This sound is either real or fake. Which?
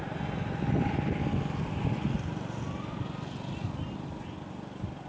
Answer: real